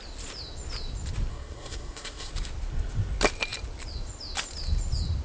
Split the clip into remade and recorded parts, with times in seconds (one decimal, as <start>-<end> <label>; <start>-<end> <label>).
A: 0.0-1.3 recorded; 1.3-2.3 remade; 2.3-5.2 recorded